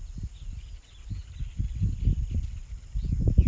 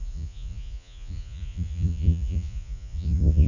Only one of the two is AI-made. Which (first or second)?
second